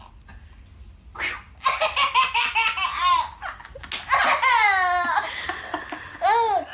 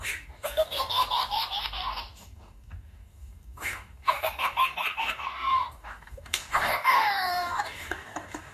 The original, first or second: first